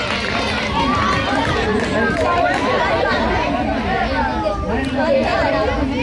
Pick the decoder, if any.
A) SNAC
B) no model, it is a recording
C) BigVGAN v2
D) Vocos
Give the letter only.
B